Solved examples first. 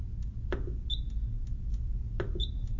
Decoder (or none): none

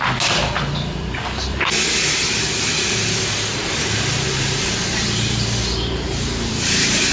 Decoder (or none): vocoder, BigVGAN v2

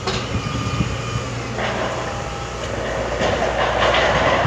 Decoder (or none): none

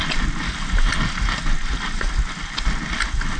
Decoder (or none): none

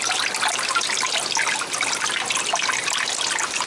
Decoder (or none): none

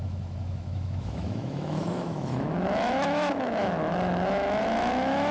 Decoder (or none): autoencoder, DAC-VAE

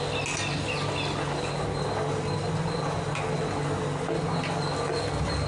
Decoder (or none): none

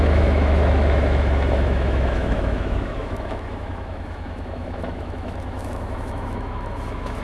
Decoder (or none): autoencoder, DAC-VAE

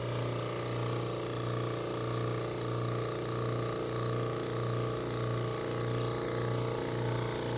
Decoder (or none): none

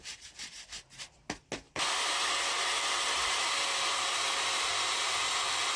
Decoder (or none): none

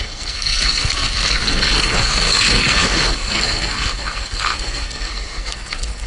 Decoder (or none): codec, SNAC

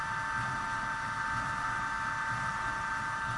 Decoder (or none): none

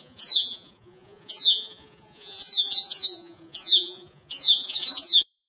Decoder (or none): vocoder, Vocos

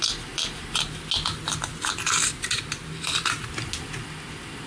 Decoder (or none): none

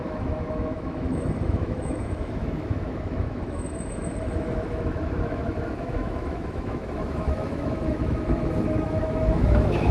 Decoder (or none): autoencoder, DAC-VAE